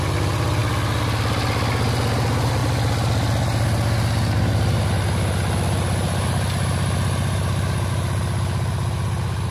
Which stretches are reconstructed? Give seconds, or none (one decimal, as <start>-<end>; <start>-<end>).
none